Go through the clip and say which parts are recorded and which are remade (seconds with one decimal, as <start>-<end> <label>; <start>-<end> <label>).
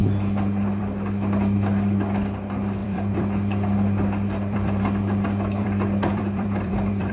0.0-2.8 recorded; 2.8-4.8 remade; 4.8-5.6 recorded; 5.6-7.1 remade